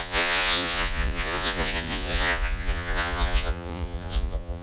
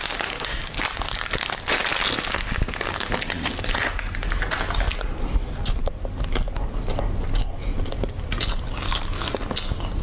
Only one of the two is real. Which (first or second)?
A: second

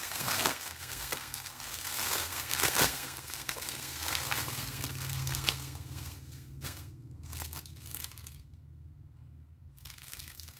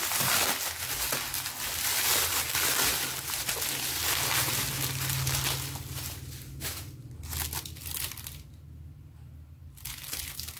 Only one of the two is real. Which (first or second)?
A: second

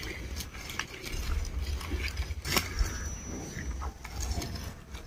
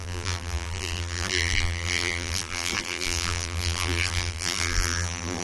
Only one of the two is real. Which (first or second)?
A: first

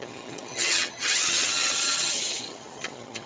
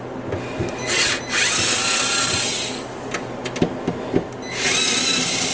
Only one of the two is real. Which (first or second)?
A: second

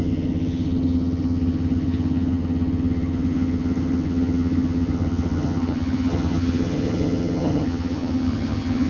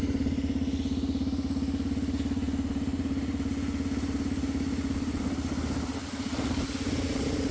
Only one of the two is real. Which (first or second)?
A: second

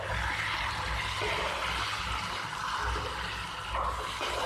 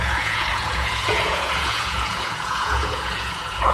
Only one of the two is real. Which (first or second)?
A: first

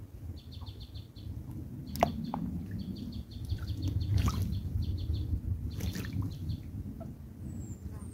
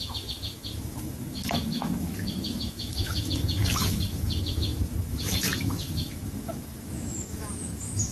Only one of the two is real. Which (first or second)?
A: first